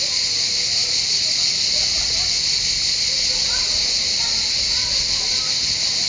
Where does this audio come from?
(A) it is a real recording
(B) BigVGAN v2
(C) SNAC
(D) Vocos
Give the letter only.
A